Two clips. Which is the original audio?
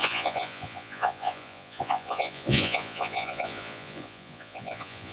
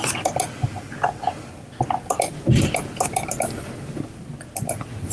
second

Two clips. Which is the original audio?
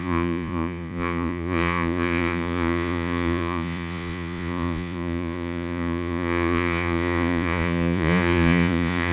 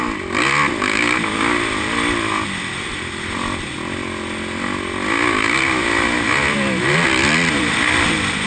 second